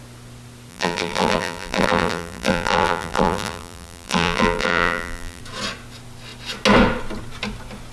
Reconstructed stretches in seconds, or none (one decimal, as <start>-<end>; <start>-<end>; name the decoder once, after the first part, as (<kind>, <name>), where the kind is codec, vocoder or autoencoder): 0.7-5.4 (vocoder, BigVGAN v2)